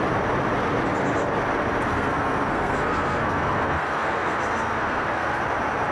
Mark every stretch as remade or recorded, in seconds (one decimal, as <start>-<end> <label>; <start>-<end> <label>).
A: 0.0-1.9 recorded; 1.9-5.4 remade; 5.4-5.9 recorded